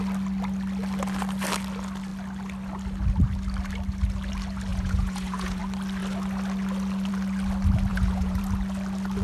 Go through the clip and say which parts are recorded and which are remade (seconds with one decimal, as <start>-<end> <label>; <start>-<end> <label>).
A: 0.0-4.7 recorded; 4.7-5.6 remade; 5.6-7.9 recorded; 7.9-8.4 remade; 8.4-9.2 recorded